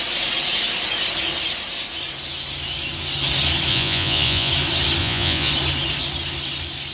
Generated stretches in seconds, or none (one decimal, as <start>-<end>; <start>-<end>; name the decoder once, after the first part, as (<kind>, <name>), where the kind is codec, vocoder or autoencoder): 3.7-4.5 (vocoder, Vocos); 5.0-5.5